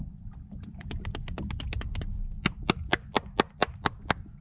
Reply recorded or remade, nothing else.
recorded